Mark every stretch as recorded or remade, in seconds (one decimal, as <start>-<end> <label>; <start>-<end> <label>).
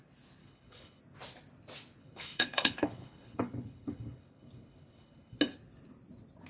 0.0-0.4 recorded; 0.4-1.0 remade; 1.0-2.0 recorded; 2.0-5.4 remade; 5.4-6.5 recorded